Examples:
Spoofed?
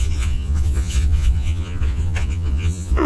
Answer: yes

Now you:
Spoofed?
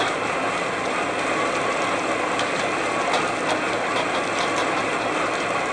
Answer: no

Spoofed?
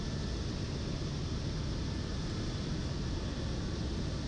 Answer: no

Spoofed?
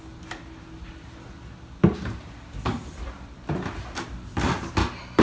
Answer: no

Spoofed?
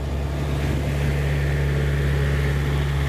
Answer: no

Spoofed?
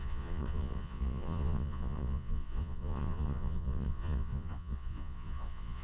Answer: yes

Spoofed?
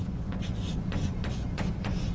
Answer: yes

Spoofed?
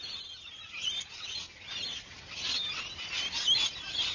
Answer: no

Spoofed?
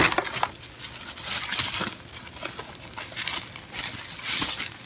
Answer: no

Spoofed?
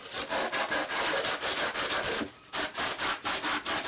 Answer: no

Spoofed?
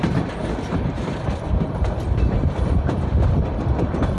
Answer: no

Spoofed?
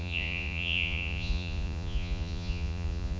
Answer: yes